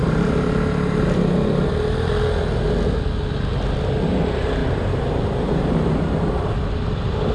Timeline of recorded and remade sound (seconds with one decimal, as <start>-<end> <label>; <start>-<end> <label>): 0.0-1.2 remade; 1.2-7.3 recorded